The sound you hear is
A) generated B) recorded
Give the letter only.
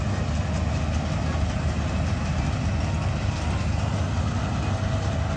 B